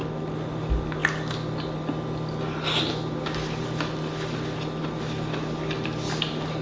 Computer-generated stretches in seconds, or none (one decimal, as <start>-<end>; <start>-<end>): none